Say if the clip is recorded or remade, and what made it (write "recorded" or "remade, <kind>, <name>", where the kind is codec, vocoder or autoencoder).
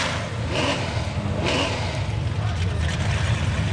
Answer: recorded